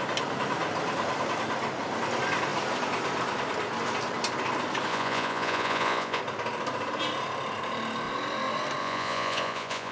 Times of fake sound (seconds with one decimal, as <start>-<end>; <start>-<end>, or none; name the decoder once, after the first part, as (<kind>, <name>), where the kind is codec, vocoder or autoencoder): 4.9-6.2 (vocoder, Vocos); 8.8-9.9